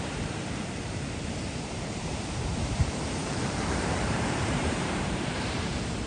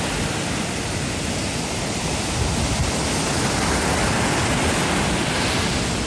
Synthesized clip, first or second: first